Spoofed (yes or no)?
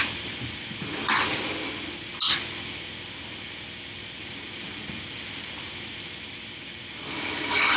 no